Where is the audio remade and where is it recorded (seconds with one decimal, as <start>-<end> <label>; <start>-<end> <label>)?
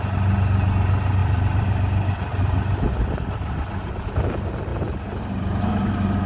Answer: 0.0-1.2 recorded; 1.2-2.4 remade; 2.4-6.3 recorded